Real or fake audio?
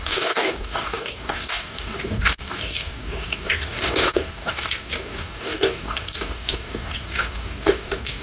fake